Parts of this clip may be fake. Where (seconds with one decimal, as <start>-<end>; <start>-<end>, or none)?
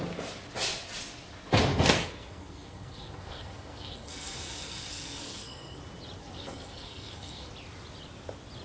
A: 1.7-5.8; 6.2-7.5